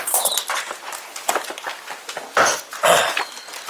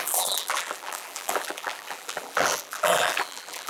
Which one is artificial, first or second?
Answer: second